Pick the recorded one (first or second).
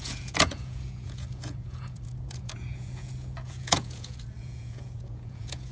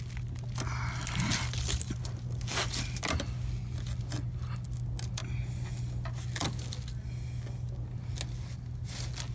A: second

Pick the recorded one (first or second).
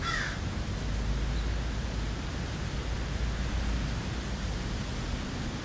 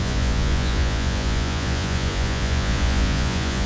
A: first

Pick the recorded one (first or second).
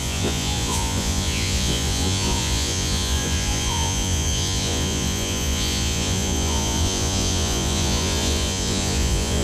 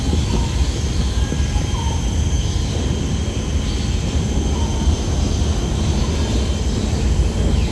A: second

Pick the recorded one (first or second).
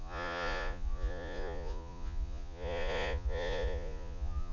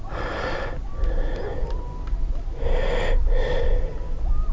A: second